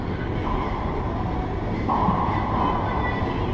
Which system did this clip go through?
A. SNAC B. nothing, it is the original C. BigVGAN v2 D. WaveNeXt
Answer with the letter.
B